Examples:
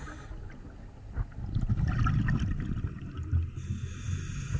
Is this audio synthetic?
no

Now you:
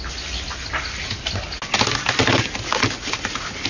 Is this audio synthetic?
no